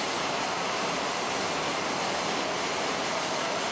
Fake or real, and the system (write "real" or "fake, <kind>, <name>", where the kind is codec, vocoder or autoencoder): fake, vocoder, BigVGAN v2